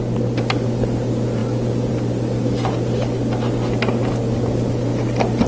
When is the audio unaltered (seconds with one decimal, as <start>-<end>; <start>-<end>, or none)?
0.0-5.5